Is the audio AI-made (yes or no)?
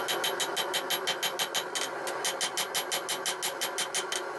no